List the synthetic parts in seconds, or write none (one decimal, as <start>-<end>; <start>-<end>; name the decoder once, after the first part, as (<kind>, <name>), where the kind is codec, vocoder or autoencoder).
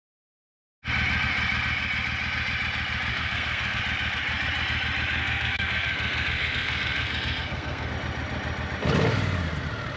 3.1-3.8 (codec, SNAC); 5.2-7.9